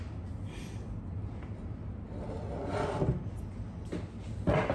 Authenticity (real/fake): real